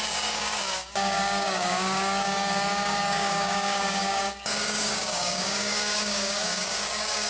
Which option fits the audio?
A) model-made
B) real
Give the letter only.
A